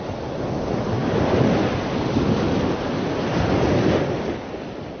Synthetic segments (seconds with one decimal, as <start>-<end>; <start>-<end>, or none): none